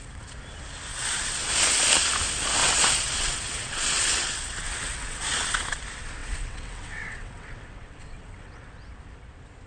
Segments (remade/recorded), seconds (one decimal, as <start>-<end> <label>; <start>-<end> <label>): 0.0-0.9 recorded; 0.9-1.5 remade; 1.5-2.6 recorded; 2.6-5.8 remade; 5.8-6.2 recorded; 6.2-8.7 remade; 8.7-9.7 recorded